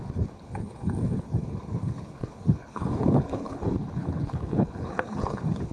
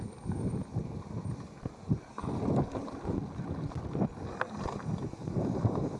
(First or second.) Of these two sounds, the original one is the second